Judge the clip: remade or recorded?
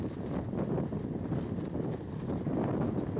recorded